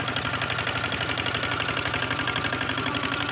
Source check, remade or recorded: recorded